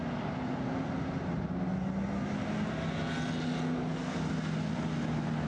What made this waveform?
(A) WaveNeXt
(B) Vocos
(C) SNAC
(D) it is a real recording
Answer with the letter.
D